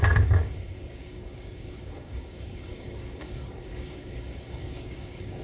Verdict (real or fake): fake